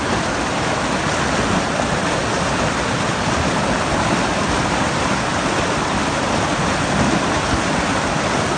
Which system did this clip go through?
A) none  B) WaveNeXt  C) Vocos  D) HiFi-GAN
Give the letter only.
A